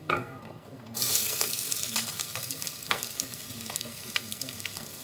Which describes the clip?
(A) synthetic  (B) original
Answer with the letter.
A